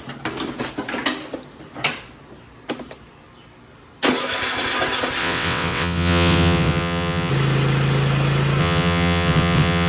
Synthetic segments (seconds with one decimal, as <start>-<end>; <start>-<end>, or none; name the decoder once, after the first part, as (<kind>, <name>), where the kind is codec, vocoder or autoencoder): 5.2-7.3 (vocoder, WaveNeXt); 8.6-9.9